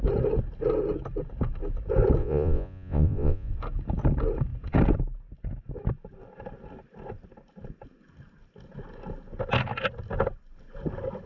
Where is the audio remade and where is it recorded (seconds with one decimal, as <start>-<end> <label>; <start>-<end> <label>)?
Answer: 0.0-2.2 recorded; 2.2-3.5 remade; 3.5-11.3 recorded